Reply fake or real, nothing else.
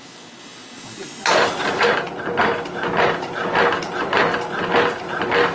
real